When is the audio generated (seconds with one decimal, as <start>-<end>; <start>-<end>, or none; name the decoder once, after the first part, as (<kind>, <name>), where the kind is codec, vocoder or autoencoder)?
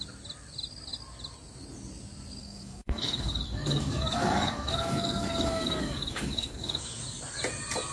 2.4-7.0 (codec, DAC)